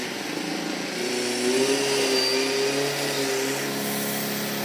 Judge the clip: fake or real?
real